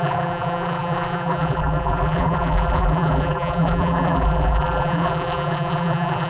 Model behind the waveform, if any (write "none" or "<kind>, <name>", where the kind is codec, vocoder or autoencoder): vocoder, BigVGAN v2